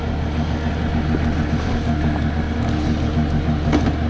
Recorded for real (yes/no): yes